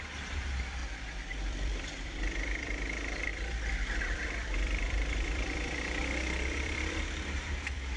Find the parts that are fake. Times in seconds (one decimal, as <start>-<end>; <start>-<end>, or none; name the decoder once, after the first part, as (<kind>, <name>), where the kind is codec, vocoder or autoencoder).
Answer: 0.0-3.3 (vocoder, BigVGAN v2); 4.0-8.0